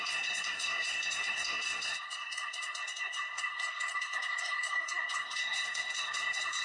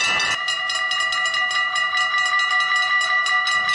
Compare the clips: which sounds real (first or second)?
second